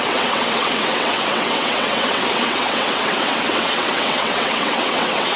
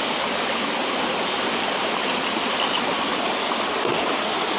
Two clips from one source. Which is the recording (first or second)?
second